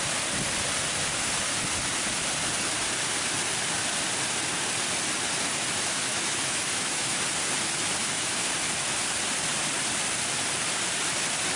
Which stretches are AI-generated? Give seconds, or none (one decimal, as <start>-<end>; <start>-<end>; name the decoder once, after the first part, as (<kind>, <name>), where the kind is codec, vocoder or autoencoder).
5.9-7.2 (autoencoder, DAC-VAE); 8.0-8.5